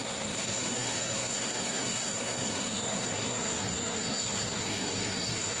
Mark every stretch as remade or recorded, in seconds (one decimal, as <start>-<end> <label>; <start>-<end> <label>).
0.0-5.6 remade